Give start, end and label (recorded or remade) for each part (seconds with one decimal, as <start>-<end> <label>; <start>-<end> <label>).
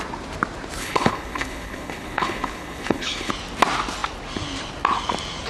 0.0-0.8 recorded; 0.8-3.3 remade; 3.3-5.5 recorded